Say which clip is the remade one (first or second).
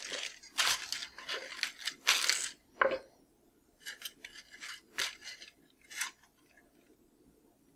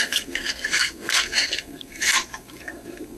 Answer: second